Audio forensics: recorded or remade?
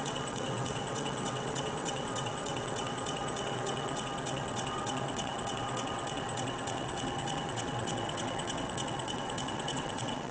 remade